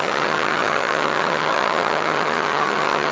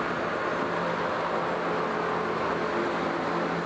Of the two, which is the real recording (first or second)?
second